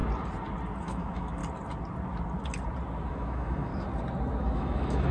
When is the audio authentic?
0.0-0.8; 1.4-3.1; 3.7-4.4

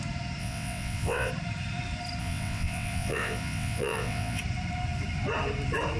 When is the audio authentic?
0.0-0.4; 1.3-2.2; 4.4-6.0

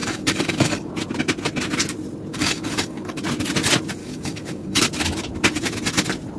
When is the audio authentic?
0.9-2.3; 3.2-4.0; 4.8-6.4